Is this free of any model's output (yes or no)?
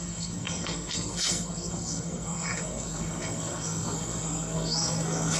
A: no